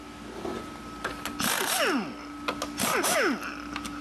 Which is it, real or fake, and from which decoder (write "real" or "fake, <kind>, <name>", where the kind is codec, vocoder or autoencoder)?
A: real